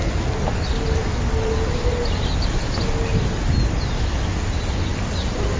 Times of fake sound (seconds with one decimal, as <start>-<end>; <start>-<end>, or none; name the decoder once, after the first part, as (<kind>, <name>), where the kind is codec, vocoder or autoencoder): none